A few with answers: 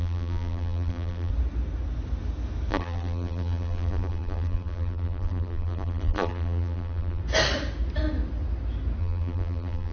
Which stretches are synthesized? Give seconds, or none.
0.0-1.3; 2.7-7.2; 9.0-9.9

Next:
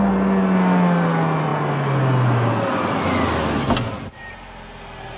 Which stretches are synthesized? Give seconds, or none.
none

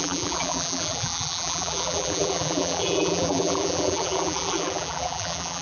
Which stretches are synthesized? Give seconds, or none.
0.0-5.6

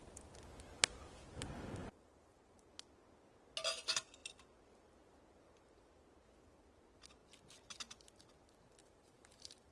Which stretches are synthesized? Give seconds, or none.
1.8-2.7; 8.8-9.7

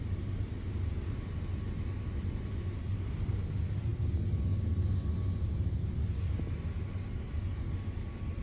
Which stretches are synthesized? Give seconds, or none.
none